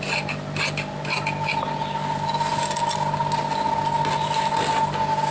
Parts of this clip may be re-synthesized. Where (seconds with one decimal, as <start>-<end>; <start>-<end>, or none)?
none